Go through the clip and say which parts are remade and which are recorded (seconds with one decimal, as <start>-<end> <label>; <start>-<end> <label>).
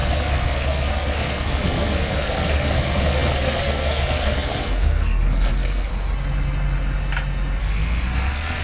0.0-5.9 remade; 5.9-7.6 recorded; 7.6-8.6 remade